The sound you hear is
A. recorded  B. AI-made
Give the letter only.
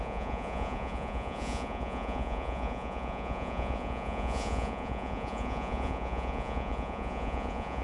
B